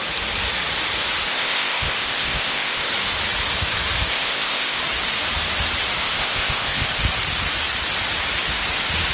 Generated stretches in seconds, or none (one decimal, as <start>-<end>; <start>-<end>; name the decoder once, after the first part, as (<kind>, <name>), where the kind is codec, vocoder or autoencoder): 1.3-2.9 (codec, ZipCodec); 4.1-4.8; 6.0-7.0

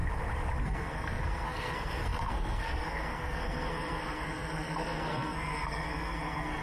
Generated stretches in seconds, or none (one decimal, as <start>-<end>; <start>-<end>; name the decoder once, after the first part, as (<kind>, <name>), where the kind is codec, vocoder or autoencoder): 0.6-6.6 (codec, SNAC)